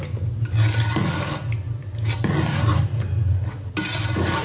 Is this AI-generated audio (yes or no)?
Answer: no